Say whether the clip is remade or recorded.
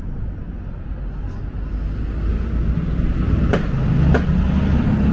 recorded